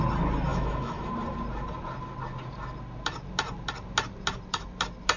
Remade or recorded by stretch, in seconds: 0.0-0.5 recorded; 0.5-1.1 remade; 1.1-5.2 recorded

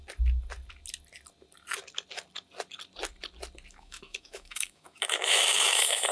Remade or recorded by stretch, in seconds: 0.0-3.7 recorded; 3.7-6.1 remade

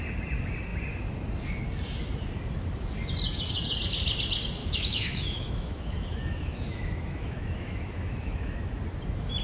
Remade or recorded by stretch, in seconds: 0.0-4.6 recorded; 4.6-8.8 remade; 8.8-9.4 recorded

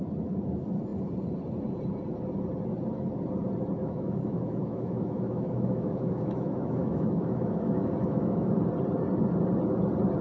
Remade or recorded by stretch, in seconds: 0.0-3.8 recorded; 3.8-8.5 remade; 8.5-10.2 recorded